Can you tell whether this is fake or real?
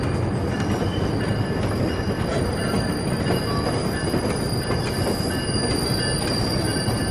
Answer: real